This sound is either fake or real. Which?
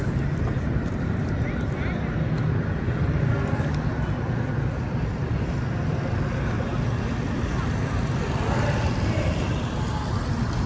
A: real